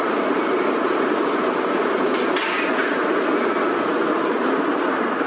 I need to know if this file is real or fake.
real